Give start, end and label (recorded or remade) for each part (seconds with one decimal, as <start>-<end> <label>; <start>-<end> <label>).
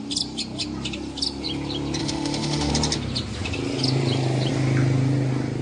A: 0.0-2.0 recorded; 2.0-2.7 remade; 2.7-5.6 recorded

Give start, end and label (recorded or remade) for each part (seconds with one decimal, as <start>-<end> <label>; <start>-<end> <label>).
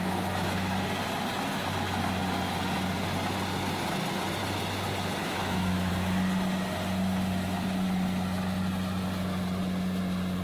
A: 0.0-0.8 remade; 0.8-5.2 recorded; 5.2-5.9 remade; 5.9-10.4 recorded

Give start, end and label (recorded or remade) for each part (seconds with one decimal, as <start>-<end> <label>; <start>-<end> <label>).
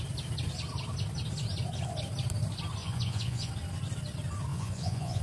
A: 0.0-2.8 recorded; 2.8-3.5 remade; 3.5-4.5 recorded; 4.5-5.2 remade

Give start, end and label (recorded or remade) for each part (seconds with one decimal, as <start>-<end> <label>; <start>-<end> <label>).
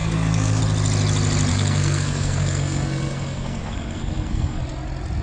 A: 0.0-0.6 remade; 0.6-1.5 recorded; 1.5-4.6 remade; 4.6-5.2 recorded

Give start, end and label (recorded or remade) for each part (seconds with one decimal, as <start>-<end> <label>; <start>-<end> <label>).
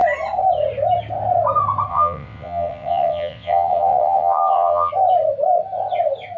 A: 0.0-1.9 recorded; 1.9-4.9 remade; 4.9-6.4 recorded